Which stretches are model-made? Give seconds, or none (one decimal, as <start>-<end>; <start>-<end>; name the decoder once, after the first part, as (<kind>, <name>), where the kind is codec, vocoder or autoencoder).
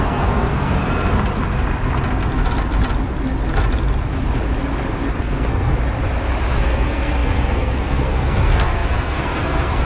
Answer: 0.0-0.8 (codec, SNAC); 5.2-5.7; 6.5-9.8